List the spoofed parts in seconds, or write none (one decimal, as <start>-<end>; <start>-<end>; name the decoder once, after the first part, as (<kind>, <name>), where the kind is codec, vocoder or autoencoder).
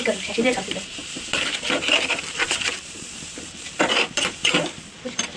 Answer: 0.0-5.4 (vocoder, BigVGAN v2)